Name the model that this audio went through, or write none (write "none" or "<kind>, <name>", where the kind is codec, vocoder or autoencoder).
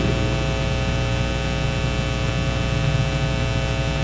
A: none